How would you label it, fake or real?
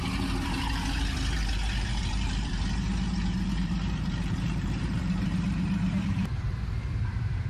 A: fake